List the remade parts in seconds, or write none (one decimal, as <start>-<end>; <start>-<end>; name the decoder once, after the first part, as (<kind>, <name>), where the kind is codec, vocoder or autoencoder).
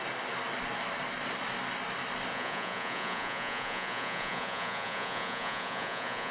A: 2.3-6.3 (vocoder, Vocos)